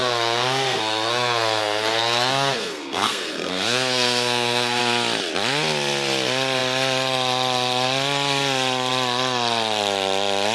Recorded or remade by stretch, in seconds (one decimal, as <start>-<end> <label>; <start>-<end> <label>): 0.0-4.8 remade; 4.8-10.5 recorded